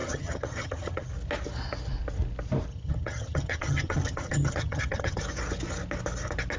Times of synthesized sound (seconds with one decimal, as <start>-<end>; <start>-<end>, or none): 0.0-1.1; 2.7-5.2